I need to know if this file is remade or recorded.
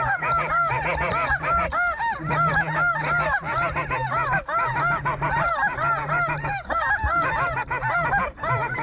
recorded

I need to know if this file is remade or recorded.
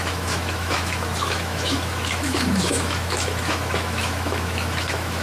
remade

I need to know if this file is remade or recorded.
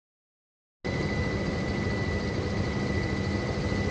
recorded